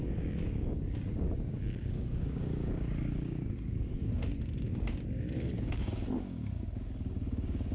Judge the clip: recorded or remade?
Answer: remade